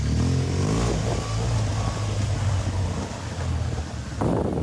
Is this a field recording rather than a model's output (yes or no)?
yes